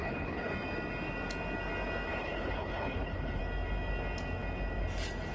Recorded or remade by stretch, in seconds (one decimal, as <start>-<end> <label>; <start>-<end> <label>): 0.0-0.5 remade; 0.5-2.1 recorded; 2.1-3.4 remade; 3.4-5.3 recorded